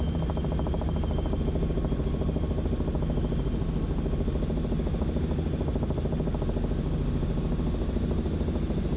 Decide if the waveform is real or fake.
real